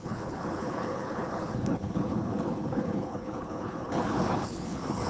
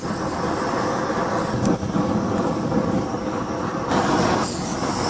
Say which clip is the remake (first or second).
first